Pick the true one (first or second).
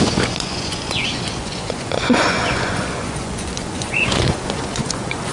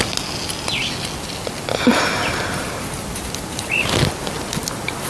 second